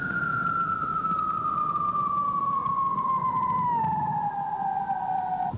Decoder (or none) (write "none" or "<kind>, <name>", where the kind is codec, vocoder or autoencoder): none